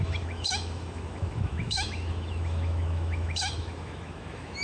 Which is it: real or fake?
fake